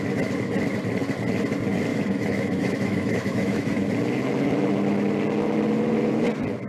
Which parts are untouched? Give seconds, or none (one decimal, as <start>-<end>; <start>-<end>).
0.0-1.9; 3.9-6.7